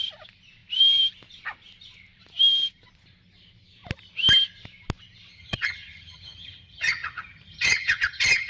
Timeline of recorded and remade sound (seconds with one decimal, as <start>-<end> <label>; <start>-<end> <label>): 0.0-5.4 recorded; 5.4-8.5 remade